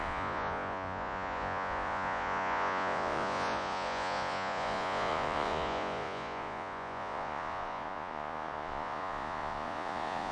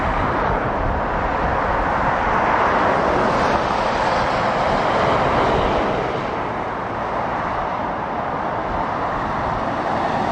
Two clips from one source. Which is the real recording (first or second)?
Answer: second